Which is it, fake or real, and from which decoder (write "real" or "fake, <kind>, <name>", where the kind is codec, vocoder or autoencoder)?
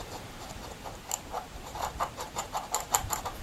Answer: fake, vocoder, BigVGAN v2